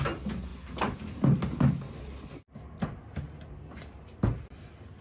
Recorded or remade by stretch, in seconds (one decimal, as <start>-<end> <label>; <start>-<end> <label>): 0.0-5.0 recorded